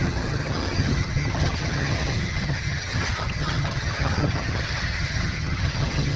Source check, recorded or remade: remade